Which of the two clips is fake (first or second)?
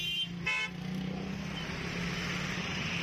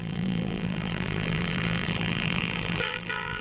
second